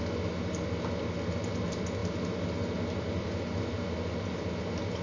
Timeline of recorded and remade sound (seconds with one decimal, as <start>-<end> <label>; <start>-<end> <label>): 0.0-5.0 recorded